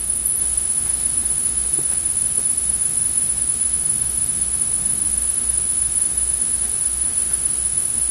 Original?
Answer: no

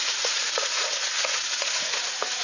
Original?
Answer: no